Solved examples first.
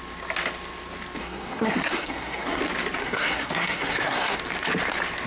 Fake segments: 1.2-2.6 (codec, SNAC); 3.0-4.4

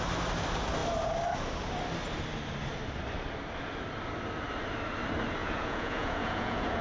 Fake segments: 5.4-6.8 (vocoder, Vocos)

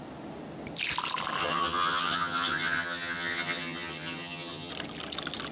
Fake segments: 1.4-4.7 (vocoder, HiFi-GAN)